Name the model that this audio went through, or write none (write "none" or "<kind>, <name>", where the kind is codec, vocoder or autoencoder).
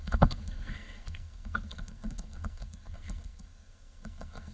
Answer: codec, SNAC